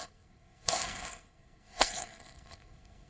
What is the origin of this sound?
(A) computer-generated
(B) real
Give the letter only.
A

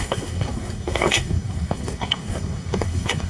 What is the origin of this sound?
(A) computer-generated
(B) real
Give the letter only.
A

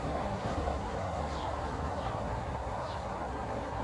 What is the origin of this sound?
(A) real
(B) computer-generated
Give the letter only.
B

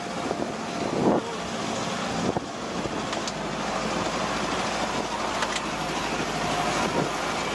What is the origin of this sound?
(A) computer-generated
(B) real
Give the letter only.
B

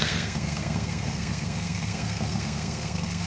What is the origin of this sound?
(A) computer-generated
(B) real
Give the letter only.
A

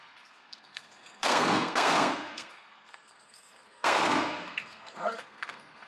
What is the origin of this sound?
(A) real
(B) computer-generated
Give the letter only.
B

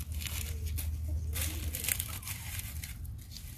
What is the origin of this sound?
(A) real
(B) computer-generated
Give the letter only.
A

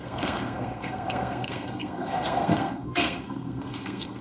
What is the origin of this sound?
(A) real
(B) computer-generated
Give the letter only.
B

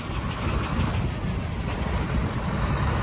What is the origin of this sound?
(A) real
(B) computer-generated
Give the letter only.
A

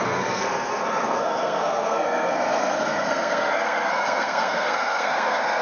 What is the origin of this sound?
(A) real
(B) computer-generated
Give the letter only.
B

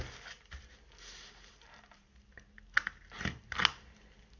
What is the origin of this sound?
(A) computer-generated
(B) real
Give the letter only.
B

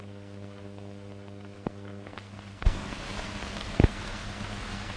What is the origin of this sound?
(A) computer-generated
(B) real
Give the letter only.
A